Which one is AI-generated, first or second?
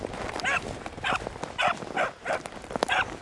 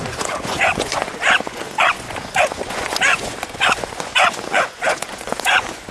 second